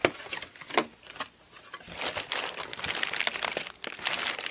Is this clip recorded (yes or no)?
yes